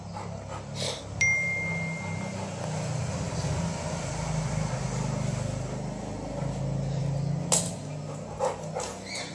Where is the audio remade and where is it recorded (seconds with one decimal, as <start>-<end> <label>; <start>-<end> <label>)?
0.0-9.3 recorded